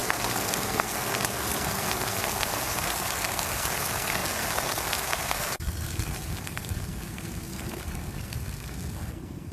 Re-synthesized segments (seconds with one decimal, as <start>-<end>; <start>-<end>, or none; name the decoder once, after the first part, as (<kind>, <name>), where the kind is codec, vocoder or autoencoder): 0.0-9.5 (codec, SNAC)